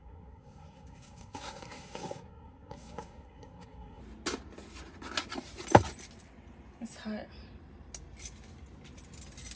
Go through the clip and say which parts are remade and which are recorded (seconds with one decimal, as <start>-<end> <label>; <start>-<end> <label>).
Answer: 0.0-4.0 remade; 4.0-9.6 recorded